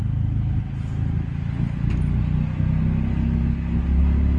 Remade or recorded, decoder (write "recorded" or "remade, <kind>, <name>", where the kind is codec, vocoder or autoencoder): recorded